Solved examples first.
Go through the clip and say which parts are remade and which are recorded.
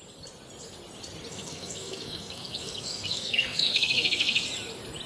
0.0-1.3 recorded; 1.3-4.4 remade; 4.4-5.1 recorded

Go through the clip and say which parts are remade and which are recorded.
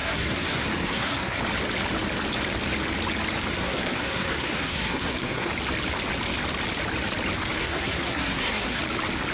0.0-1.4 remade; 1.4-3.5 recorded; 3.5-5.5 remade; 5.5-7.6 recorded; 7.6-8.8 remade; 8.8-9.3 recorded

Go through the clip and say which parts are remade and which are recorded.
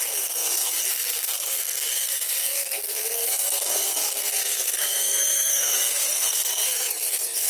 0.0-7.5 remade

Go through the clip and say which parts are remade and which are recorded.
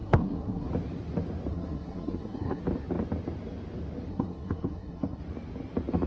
0.0-0.7 remade; 0.7-1.5 recorded; 1.5-2.6 remade; 2.6-4.1 recorded; 4.1-5.2 remade; 5.2-6.1 recorded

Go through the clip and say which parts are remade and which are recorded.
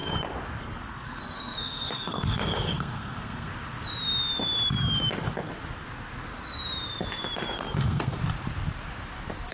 0.0-0.6 recorded; 0.6-3.5 remade; 3.5-7.8 recorded; 7.8-8.2 remade; 8.2-9.5 recorded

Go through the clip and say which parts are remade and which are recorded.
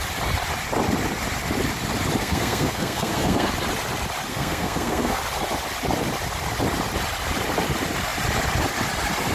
0.0-2.2 recorded; 2.2-3.5 remade; 3.5-4.3 recorded; 4.3-5.2 remade; 5.2-9.3 recorded